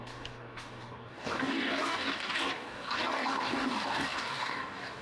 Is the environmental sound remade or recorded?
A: remade